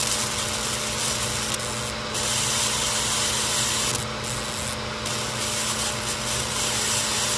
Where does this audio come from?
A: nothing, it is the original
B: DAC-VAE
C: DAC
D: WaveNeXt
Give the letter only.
A